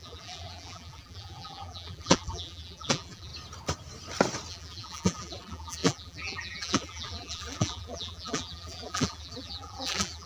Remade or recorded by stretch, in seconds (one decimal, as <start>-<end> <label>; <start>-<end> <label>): 0.0-3.3 remade; 3.3-4.5 recorded; 4.5-10.3 remade